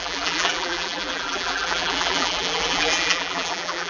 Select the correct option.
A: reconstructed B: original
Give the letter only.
A